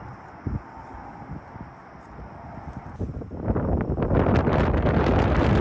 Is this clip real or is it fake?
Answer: real